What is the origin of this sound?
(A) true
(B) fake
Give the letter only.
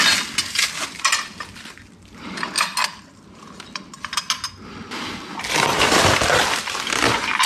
A